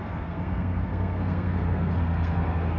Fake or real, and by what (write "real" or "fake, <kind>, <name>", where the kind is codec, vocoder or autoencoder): fake, codec, SNAC